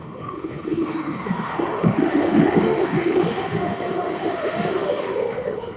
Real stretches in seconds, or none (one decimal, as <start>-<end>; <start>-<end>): none